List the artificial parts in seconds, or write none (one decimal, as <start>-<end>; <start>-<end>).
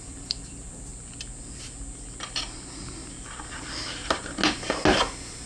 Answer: 0.0-0.9; 3.5-4.0